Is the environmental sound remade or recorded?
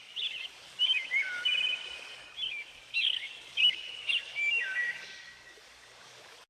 remade